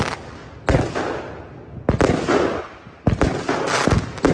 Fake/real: real